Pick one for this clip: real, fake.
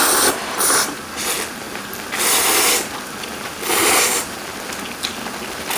real